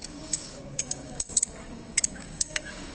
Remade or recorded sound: remade